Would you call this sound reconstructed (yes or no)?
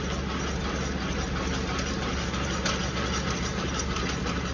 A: no